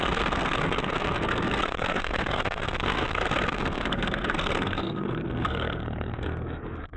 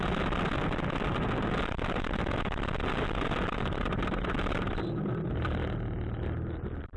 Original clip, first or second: second